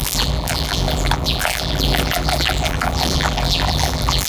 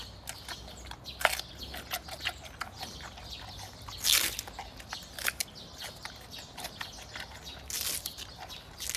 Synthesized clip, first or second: first